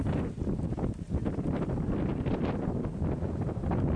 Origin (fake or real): real